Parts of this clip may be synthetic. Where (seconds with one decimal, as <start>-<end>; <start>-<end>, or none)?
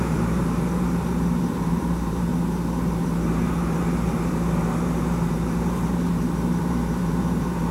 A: 0.0-2.3; 2.9-7.7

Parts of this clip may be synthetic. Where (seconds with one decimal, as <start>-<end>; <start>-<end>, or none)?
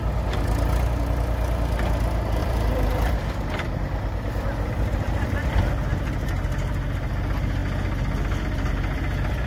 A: 2.4-5.6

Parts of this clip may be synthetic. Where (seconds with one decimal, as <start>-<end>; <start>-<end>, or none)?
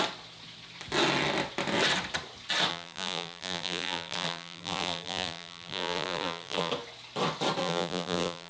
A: 2.7-6.7; 7.6-8.5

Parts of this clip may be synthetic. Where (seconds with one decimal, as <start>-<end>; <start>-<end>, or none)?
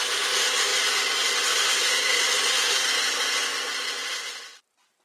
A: none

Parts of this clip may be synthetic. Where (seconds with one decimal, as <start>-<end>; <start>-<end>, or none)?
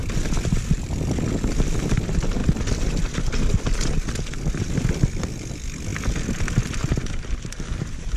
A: 0.7-2.4; 4.9-5.9; 7.1-8.2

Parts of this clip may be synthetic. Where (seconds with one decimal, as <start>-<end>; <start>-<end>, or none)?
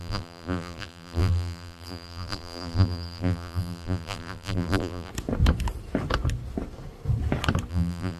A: 0.0-5.1; 7.7-8.2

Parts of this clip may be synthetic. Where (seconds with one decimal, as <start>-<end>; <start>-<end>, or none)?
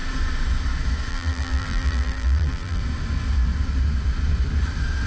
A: 1.1-2.8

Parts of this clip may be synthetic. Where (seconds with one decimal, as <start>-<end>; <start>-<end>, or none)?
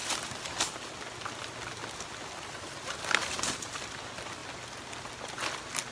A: none